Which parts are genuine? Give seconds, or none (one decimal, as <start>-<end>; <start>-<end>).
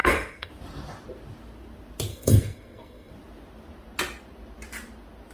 0.5-2.1; 3.1-5.3